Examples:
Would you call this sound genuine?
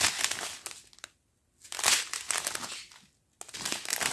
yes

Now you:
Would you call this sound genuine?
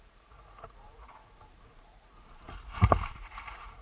no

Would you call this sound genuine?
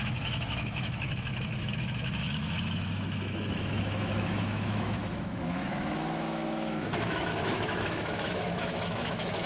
no